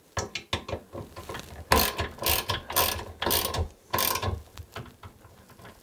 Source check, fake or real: real